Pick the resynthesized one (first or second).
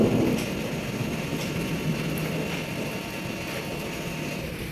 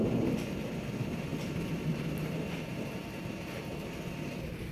second